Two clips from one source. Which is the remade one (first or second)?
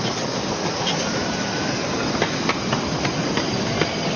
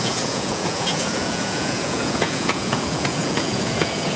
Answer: second